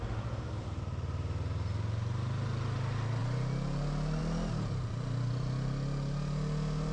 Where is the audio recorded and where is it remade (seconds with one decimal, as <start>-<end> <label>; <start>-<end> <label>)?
0.0-6.9 recorded